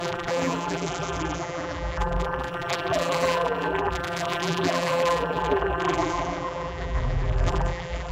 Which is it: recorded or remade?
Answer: remade